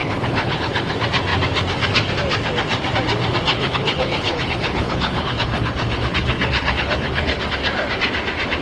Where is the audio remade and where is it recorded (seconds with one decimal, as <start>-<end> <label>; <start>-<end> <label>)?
0.0-0.9 remade; 0.9-3.5 recorded; 3.5-7.4 remade; 7.4-8.6 recorded